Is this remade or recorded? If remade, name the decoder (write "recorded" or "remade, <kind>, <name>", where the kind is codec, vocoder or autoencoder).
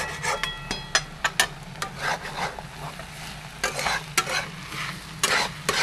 recorded